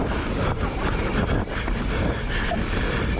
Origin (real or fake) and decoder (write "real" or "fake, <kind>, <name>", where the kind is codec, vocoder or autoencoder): real